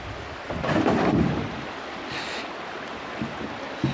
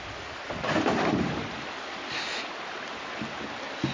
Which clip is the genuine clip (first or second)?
first